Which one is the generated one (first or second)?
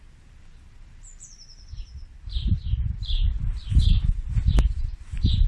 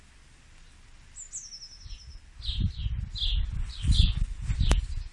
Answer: first